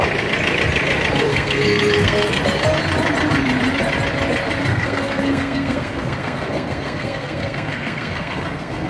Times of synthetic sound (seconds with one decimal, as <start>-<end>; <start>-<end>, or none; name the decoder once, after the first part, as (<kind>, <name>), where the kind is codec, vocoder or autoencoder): 1.3-2.4 (codec, SNAC); 4.7-8.9